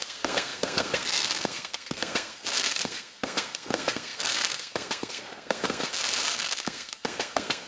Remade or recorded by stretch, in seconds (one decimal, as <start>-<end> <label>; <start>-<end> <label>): 0.0-7.7 remade